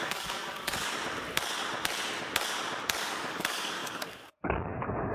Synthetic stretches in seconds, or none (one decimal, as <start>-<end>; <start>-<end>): 0.0-0.9; 3.0-5.1